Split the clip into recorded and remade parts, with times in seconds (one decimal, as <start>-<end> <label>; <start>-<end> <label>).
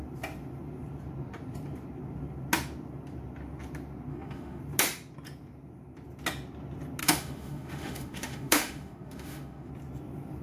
0.0-4.1 recorded; 4.1-4.6 remade; 4.6-7.0 recorded; 7.0-9.7 remade; 9.7-10.4 recorded